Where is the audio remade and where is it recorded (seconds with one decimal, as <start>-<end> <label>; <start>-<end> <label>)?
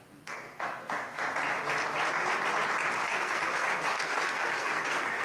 0.0-1.2 remade; 1.2-3.0 recorded; 3.0-5.2 remade